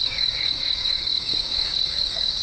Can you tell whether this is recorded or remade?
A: remade